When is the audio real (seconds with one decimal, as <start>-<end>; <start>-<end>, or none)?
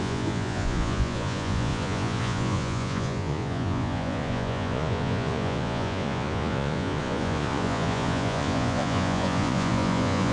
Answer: none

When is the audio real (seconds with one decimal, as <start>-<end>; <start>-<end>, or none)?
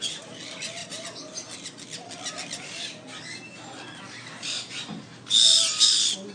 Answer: 0.0-6.3